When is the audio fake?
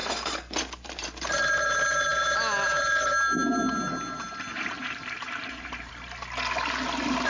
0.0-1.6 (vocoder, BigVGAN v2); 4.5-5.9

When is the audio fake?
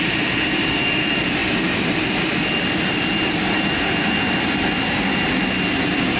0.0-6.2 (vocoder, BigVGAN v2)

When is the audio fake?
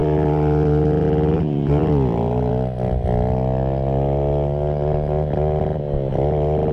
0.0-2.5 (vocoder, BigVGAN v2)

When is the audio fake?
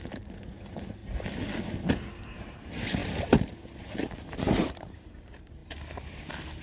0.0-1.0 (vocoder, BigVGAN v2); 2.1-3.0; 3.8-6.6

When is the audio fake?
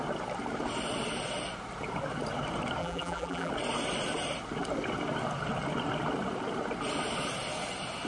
2.8-3.5 (vocoder, BigVGAN v2)